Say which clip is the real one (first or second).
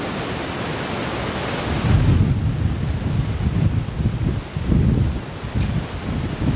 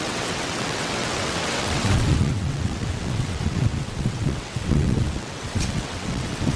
first